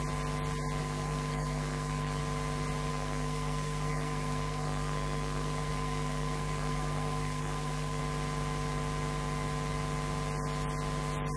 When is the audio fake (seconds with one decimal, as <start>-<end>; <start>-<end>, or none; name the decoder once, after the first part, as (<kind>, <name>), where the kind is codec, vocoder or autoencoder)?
0.8-2.2 (codec, SNAC); 2.9-8.0